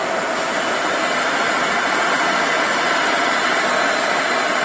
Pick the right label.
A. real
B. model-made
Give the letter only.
A